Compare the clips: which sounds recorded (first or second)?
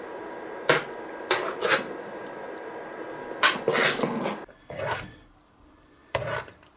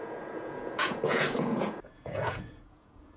first